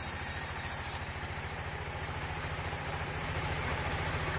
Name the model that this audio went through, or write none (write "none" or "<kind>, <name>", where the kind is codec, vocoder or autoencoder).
vocoder, BigVGAN v2